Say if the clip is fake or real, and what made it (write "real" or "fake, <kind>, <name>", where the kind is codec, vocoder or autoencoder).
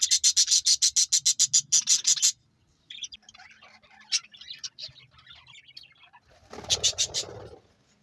real